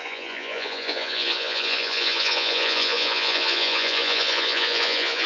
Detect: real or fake fake